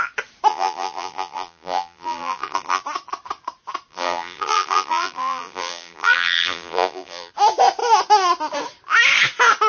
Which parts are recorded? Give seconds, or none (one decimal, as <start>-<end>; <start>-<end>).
0.0-0.5; 2.8-3.9; 7.3-9.7